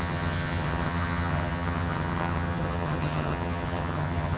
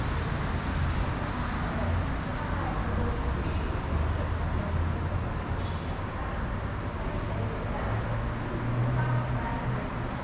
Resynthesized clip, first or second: first